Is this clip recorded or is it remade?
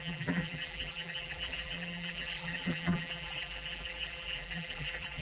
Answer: remade